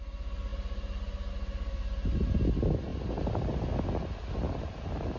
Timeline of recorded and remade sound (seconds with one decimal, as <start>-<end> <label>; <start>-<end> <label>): 0.0-5.2 recorded